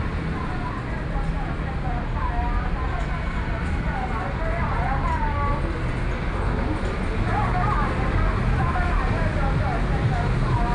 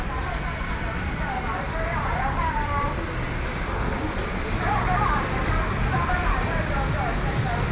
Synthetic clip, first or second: second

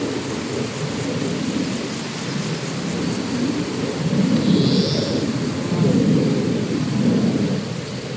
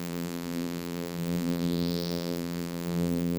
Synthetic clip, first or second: second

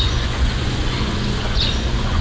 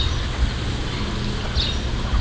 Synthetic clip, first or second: first